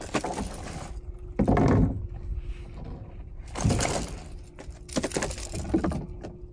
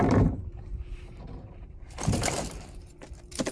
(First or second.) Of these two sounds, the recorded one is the first